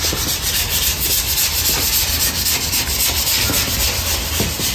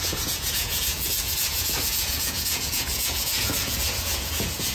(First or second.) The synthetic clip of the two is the second